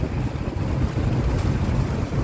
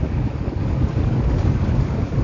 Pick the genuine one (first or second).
first